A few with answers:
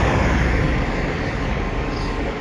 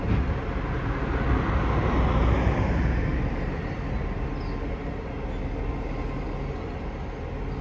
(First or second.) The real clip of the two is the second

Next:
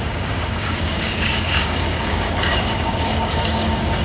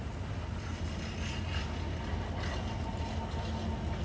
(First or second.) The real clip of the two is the second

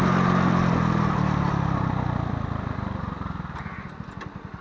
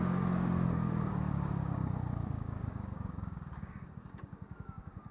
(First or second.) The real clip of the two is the first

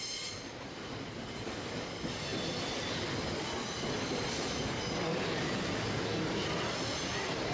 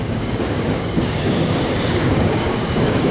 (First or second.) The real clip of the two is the first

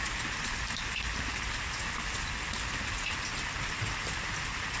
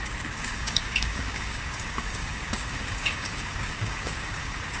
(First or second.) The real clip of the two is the first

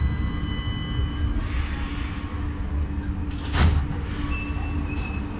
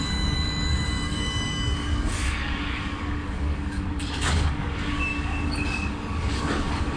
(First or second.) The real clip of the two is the first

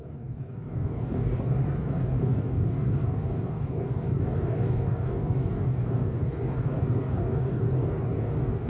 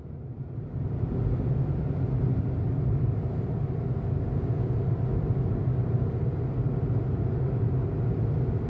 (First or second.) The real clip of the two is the second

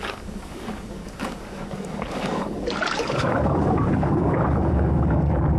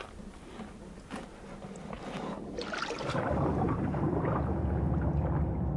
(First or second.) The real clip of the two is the second